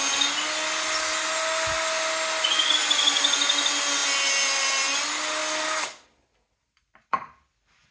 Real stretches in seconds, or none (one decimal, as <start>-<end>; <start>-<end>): 0.0-7.9